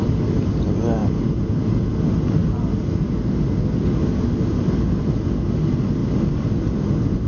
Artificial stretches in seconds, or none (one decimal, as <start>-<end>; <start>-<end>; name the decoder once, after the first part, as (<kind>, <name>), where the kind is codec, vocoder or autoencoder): none